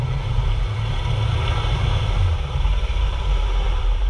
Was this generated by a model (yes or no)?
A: yes